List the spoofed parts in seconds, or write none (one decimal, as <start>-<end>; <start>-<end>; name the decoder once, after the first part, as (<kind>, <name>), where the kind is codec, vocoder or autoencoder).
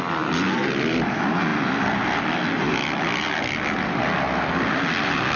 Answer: none